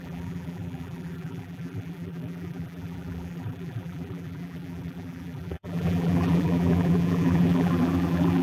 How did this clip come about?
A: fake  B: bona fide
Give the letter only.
A